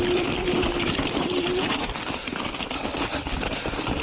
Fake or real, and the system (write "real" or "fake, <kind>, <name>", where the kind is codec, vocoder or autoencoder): fake, vocoder, BigVGAN v2